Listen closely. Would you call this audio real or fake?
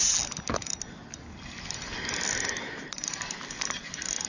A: real